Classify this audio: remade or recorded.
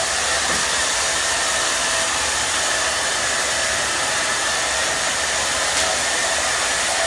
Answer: recorded